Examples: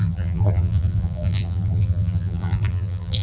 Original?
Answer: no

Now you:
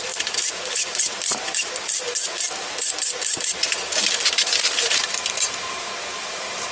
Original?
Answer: no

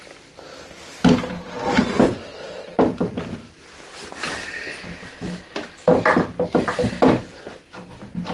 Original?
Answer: yes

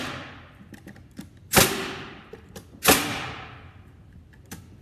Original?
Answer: no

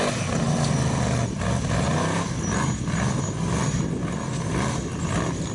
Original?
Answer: yes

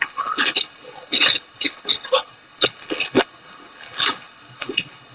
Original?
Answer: no